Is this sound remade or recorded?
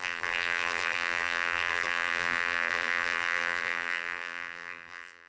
remade